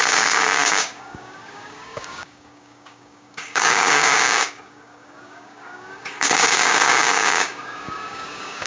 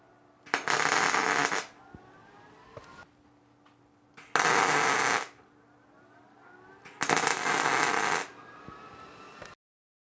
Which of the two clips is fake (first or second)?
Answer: first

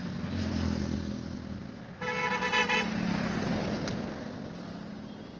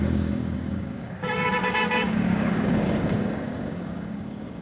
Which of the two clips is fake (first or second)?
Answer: second